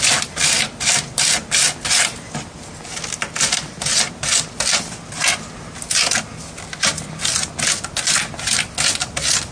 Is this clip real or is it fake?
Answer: real